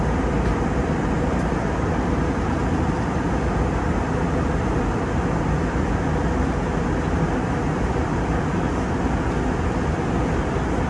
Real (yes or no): yes